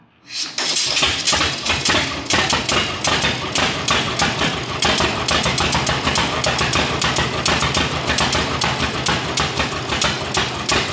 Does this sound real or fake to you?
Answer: real